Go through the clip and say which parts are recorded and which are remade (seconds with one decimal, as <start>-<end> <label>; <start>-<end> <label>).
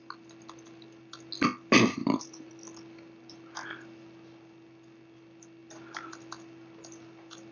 0.0-2.0 recorded; 2.0-2.5 remade; 2.5-7.5 recorded